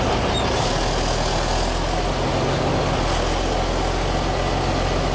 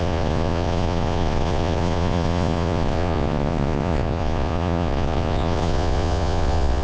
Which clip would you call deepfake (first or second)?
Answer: second